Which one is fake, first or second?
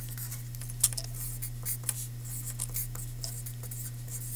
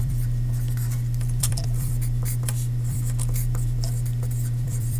second